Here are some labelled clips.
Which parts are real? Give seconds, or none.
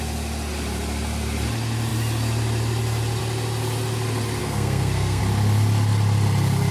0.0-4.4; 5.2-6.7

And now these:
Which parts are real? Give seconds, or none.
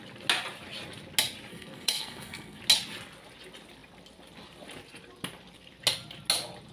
0.0-1.5; 2.6-6.7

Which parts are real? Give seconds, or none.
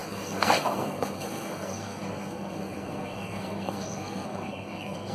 none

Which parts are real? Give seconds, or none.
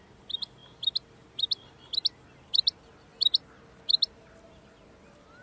0.0-5.4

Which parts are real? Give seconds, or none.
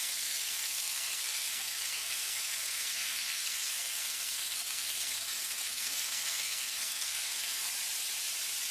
7.7-8.7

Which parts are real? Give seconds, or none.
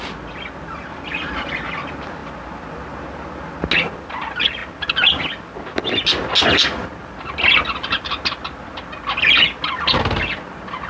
0.0-10.9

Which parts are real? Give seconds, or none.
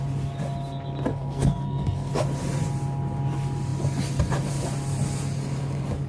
0.0-1.1; 2.1-6.1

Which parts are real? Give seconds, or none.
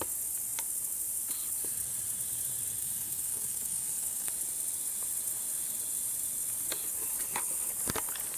0.0-2.8; 4.3-8.4